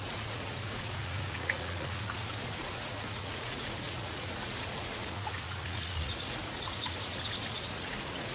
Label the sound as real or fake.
fake